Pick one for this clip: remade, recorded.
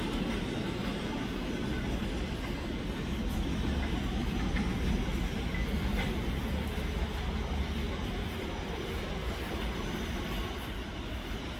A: recorded